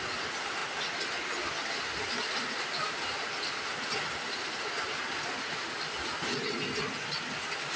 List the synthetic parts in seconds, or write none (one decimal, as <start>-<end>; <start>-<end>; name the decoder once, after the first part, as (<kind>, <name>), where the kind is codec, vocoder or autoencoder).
none